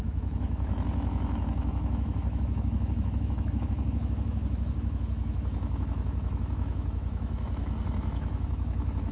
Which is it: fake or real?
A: fake